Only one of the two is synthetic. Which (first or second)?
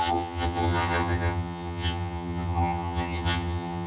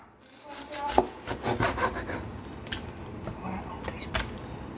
first